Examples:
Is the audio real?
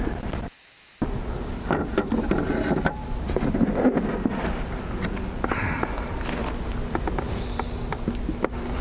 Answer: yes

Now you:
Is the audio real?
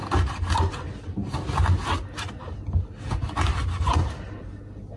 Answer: yes